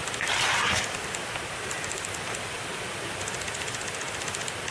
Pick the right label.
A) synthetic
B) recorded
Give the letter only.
B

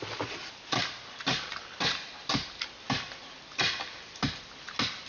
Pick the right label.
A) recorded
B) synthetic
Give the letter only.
A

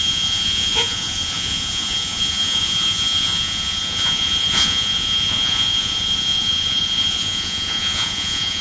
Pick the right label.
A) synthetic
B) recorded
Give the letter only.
A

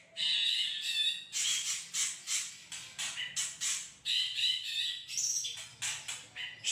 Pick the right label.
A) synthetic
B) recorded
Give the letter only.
B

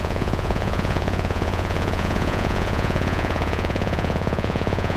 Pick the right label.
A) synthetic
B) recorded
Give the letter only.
A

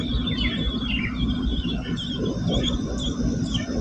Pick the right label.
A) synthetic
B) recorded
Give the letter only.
B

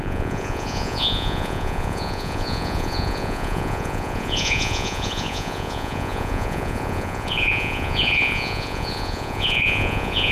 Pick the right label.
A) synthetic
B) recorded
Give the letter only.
A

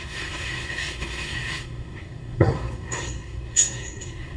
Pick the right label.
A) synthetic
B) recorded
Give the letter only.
A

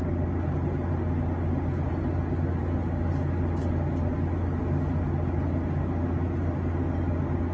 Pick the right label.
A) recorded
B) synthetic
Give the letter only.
A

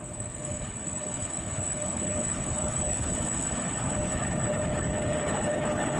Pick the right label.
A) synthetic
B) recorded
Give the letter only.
A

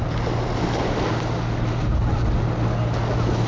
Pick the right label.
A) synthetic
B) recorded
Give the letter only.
B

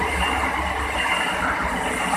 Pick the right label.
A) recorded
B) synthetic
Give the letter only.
A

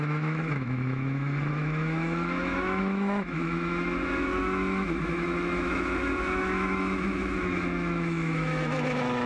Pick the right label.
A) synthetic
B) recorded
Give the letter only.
A